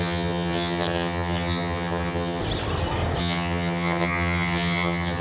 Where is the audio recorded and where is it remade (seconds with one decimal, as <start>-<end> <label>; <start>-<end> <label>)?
0.0-2.4 remade; 2.4-3.2 recorded; 3.2-5.2 remade